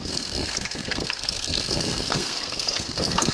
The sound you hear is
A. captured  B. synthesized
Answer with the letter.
B